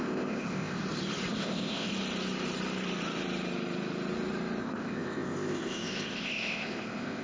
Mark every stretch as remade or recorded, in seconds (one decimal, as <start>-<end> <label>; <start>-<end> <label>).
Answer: 0.0-0.8 remade; 0.8-1.4 recorded; 1.4-1.9 remade; 1.9-4.6 recorded; 4.6-7.2 remade